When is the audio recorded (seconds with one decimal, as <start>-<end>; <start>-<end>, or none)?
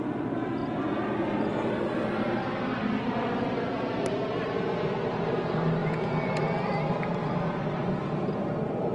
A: 0.0-5.8; 6.4-8.9